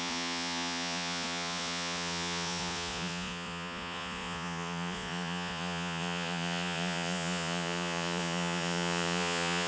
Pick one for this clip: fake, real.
fake